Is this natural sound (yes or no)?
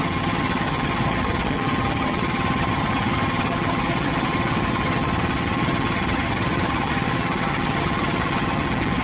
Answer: no